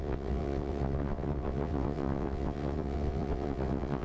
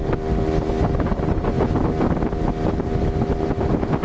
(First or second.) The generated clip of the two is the first